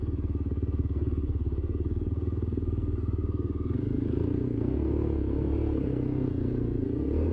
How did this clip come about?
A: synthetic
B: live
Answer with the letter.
A